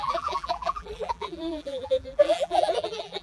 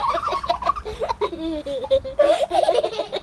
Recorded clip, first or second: second